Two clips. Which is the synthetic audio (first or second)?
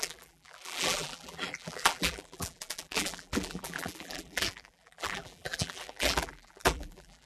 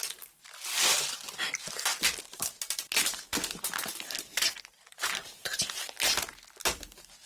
first